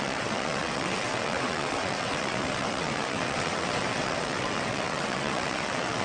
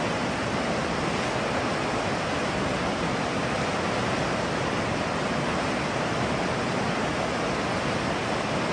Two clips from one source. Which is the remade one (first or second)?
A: first